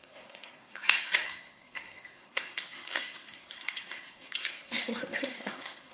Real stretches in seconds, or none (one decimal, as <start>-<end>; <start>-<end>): none